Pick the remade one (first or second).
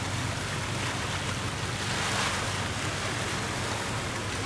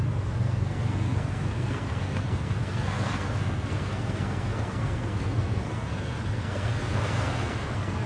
second